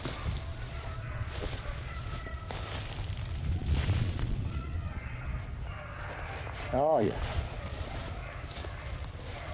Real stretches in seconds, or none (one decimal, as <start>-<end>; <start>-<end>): 0.0-0.5; 2.4-3.5; 5.2-6.9; 7.9-9.5